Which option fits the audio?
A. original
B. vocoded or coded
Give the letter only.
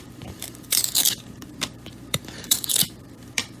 B